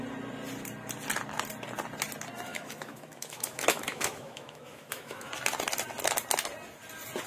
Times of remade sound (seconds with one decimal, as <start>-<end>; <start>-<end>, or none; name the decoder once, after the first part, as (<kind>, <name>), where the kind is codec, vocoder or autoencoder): 2.5-5.3 (autoencoder, DAC-VAE)